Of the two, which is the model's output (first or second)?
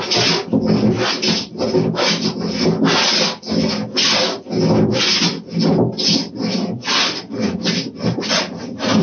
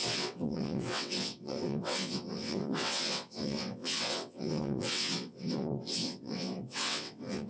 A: second